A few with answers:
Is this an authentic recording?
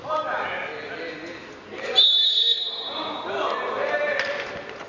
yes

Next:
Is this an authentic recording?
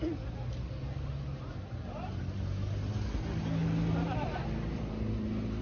yes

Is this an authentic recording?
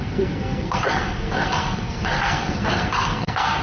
no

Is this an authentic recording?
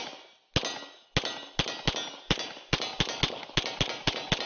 yes